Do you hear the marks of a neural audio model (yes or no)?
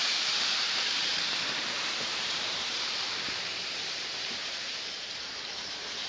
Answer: yes